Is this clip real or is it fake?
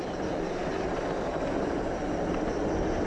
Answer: real